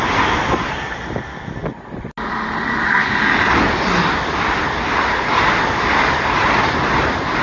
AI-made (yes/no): no